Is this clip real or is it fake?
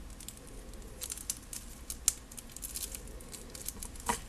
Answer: real